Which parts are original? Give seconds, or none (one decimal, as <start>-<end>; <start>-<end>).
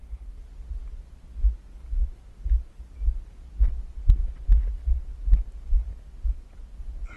0.0-7.2